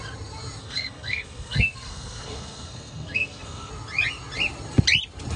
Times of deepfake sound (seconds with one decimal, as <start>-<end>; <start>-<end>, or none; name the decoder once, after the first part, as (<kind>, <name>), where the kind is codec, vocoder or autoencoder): 0.6-3.7 (codec, SNAC)